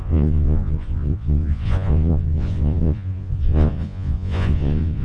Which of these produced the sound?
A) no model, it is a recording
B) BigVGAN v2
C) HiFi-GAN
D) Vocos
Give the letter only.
D